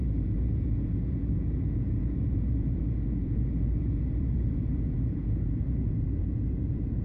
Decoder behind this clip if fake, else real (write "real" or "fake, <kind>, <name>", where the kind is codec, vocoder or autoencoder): fake, vocoder, Vocos